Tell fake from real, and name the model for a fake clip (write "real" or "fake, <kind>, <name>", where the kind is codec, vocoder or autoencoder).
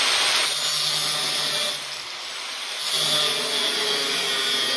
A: real